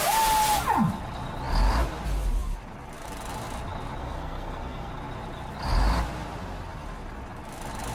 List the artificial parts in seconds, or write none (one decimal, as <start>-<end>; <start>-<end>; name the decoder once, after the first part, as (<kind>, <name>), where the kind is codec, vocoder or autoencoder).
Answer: 4.0-4.9 (codec, SNAC)

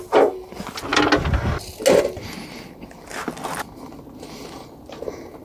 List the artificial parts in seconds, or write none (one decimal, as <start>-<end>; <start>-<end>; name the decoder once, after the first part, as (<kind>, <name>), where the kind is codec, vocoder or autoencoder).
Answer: none